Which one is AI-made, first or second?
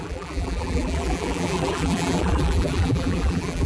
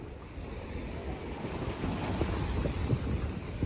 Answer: first